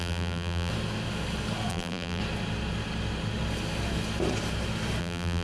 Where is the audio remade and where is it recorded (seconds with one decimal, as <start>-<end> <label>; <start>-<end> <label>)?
0.0-0.7 remade; 0.7-1.7 recorded; 1.7-2.2 remade; 2.2-5.0 recorded; 5.0-5.4 remade